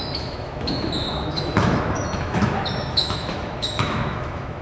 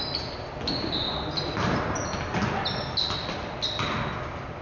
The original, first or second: second